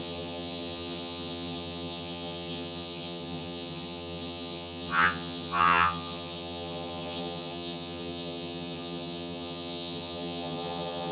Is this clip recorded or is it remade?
remade